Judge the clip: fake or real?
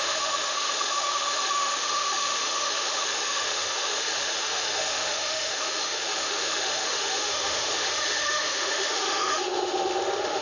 fake